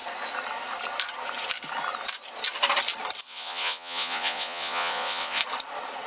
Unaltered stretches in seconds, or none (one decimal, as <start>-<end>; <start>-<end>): 0.0-3.2; 5.4-6.1